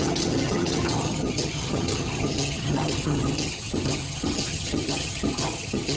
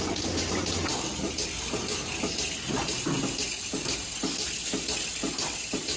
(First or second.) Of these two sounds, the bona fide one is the second